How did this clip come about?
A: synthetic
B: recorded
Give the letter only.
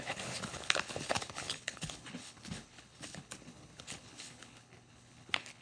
A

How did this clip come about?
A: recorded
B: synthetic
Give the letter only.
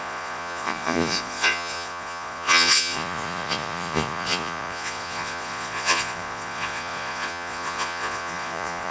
B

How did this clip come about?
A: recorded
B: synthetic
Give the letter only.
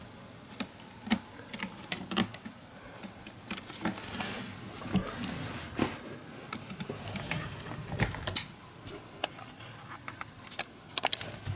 A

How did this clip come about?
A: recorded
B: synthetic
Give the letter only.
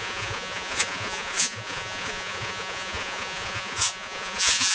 B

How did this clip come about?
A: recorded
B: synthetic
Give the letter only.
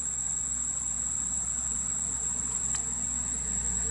A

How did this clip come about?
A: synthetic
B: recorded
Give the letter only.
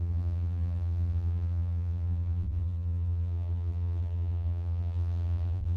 A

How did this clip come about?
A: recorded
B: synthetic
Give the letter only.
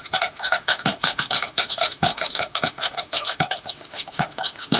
B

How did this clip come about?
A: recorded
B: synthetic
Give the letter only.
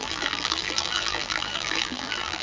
B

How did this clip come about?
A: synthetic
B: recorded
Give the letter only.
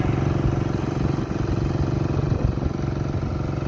B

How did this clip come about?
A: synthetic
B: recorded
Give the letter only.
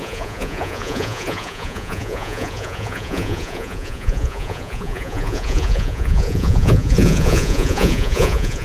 A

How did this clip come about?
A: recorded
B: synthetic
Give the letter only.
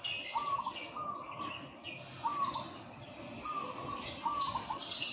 A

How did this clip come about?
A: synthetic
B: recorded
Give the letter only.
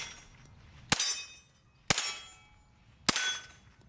B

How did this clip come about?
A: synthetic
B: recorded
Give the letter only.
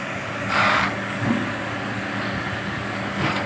A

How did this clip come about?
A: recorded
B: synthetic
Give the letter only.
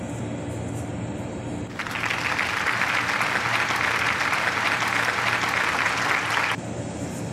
A